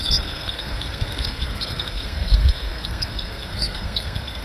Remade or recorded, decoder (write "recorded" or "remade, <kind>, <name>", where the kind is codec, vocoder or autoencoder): remade, codec, SNAC